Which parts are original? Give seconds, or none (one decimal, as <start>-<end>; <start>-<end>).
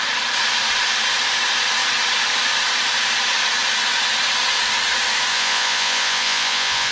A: 0.0-5.3